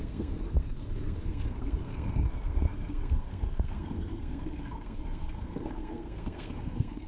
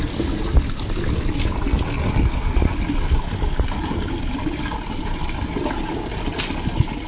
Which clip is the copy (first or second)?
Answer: first